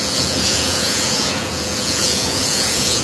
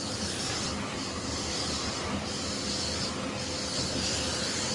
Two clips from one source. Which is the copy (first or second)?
first